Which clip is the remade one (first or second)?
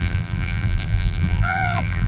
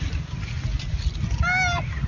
first